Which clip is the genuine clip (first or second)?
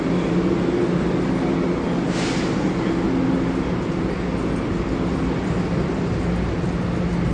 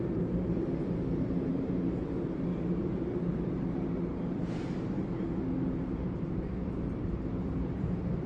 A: first